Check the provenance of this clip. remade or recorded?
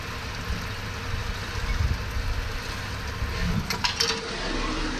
recorded